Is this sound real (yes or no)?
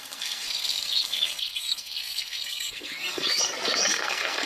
no